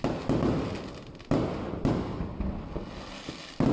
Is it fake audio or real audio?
real